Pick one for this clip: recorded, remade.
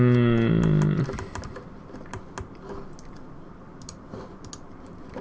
recorded